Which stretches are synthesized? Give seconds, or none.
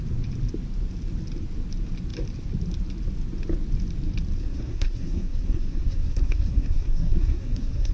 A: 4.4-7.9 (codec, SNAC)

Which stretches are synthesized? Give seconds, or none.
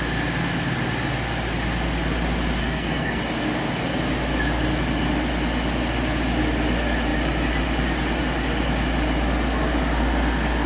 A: 2.6-3.2 (codec, SNAC)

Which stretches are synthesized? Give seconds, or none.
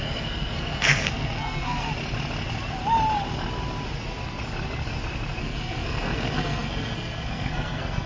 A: 0.0-1.9 (codec, SNAC); 5.4-8.1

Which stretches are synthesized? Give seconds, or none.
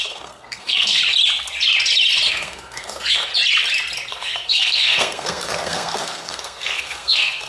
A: 0.0-1.0 (codec, SNAC); 2.3-3.3; 4.1-7.5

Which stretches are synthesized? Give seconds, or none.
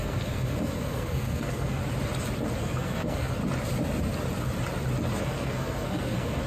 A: 0.0-1.8 (codec, SNAC); 2.6-3.4; 5.2-6.5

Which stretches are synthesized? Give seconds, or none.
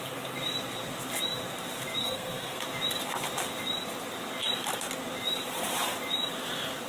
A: 2.0-2.6 (codec, SNAC)